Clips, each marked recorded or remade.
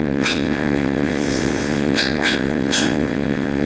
remade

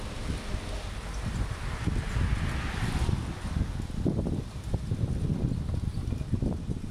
recorded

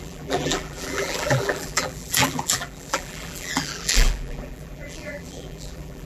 remade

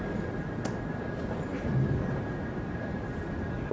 recorded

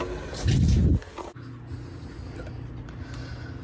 recorded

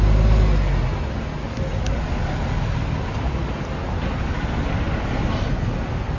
recorded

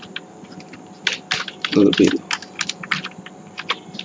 recorded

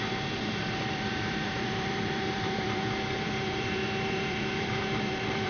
remade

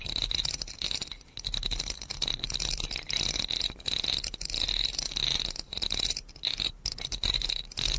recorded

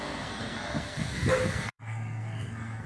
remade